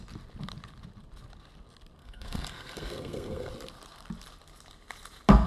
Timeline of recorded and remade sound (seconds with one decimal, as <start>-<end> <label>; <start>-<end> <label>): 0.0-2.0 recorded; 2.0-3.5 remade; 3.5-5.5 recorded